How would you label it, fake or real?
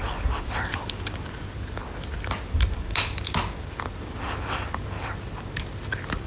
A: real